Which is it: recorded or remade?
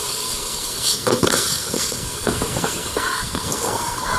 remade